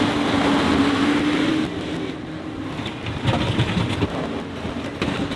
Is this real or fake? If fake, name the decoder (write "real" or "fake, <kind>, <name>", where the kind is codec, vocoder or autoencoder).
real